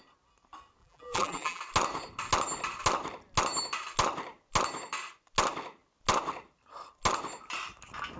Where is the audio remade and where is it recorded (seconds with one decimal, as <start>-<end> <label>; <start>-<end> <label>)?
0.0-0.8 recorded; 0.8-1.6 remade; 1.6-8.2 recorded